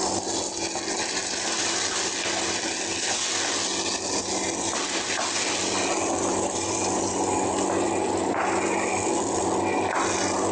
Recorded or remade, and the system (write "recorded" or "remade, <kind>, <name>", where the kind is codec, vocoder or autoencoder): recorded